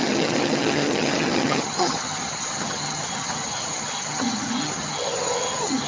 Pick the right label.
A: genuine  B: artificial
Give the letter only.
B